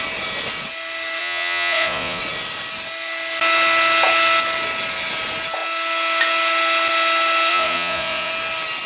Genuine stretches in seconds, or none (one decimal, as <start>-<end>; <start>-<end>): 0.0-1.2; 2.2-7.5; 8.3-8.9